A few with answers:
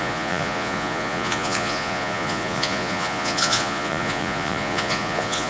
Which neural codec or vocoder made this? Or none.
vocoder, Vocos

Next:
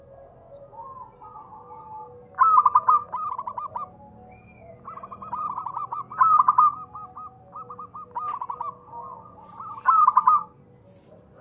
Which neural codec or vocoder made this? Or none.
none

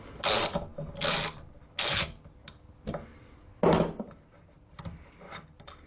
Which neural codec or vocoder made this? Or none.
none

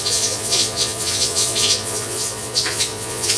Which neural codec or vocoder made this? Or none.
vocoder, Vocos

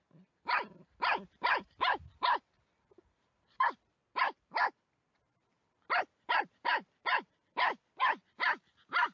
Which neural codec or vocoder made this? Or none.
vocoder, BigVGAN v2